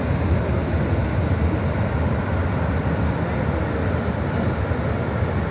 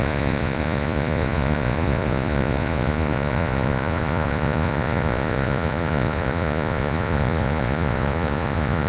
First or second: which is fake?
second